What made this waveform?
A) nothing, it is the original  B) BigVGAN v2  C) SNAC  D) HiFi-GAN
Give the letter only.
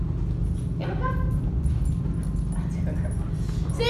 A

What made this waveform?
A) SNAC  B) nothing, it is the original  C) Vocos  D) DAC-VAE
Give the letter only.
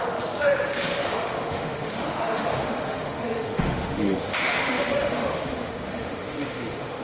D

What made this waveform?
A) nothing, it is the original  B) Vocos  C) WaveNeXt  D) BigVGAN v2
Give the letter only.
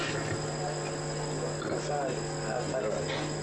A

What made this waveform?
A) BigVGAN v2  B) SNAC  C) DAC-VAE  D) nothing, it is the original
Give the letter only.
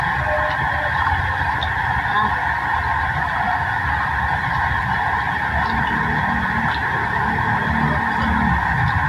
D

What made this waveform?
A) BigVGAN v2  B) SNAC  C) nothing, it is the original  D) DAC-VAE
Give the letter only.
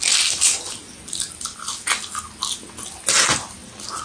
C